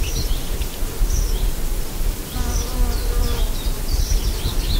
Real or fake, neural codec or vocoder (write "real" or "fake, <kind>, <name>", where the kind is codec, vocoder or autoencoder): real